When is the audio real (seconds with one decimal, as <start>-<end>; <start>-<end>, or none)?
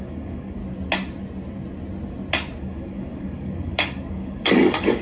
0.6-2.6